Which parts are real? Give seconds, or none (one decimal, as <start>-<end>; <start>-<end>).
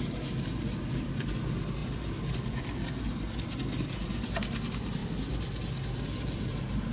0.0-6.9